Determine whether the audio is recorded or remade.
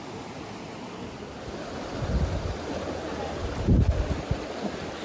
recorded